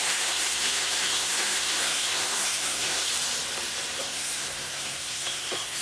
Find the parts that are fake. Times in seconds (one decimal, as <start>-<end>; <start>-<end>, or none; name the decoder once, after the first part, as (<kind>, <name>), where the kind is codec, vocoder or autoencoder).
0.0-3.1 (codec, SNAC); 4.0-5.8